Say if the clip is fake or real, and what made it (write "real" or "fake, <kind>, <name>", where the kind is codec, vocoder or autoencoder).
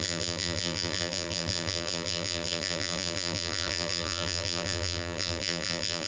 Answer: fake, vocoder, BigVGAN v2